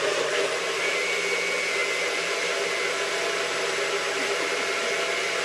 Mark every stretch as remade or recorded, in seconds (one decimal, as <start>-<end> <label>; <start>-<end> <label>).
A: 0.0-5.4 recorded